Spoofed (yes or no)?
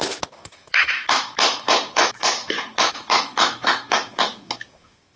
yes